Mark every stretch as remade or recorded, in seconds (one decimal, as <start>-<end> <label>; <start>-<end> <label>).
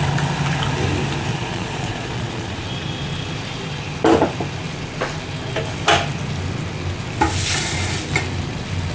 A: 0.0-1.3 recorded; 1.3-2.6 remade; 2.6-8.9 recorded